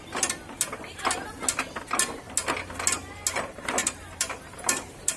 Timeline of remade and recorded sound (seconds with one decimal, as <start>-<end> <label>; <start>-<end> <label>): 0.0-3.8 recorded; 3.8-5.2 remade